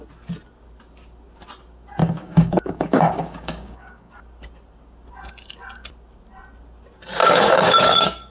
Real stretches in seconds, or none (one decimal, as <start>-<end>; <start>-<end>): 0.0-2.0; 4.1-7.2